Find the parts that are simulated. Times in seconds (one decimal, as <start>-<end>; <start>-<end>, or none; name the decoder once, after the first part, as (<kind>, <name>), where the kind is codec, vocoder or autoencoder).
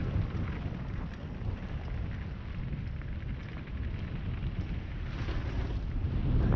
none